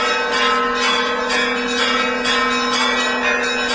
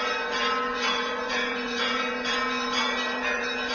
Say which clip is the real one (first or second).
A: first